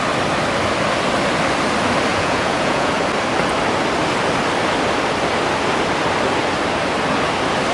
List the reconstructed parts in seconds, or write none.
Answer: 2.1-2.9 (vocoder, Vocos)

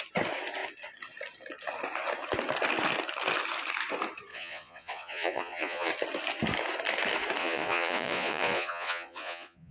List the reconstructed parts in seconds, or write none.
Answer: 4.3-5.9 (vocoder, Vocos); 7.4-9.7